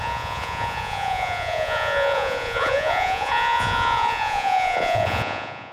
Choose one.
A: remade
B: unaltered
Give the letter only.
A